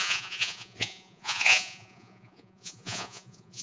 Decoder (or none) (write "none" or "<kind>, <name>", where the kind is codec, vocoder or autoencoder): vocoder, Vocos